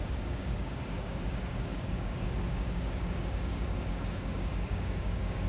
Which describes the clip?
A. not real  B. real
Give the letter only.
A